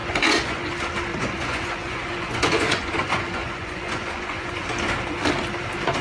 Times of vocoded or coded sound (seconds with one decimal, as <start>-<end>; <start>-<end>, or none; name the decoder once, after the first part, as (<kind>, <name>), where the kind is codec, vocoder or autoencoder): 0.0-0.7 (vocoder, Vocos); 1.1-4.7